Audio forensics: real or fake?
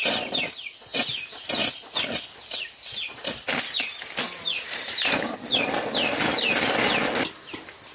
real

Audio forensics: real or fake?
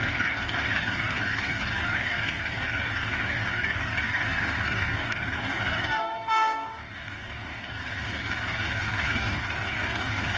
fake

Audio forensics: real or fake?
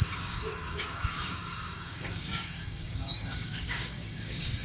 fake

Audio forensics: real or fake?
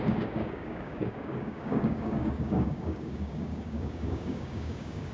fake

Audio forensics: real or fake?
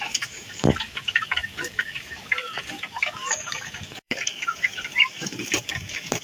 fake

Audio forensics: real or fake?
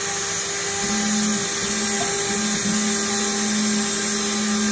real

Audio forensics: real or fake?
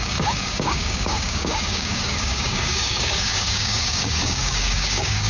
fake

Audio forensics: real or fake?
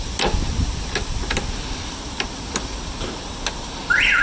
real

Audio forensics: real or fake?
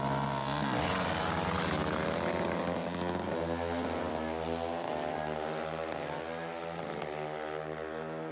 real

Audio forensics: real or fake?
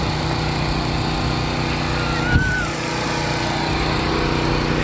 real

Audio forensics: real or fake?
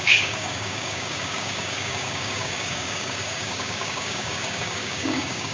fake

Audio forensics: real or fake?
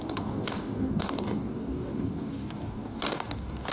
fake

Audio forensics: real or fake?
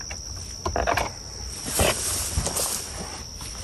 real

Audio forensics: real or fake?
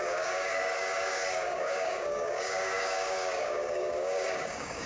fake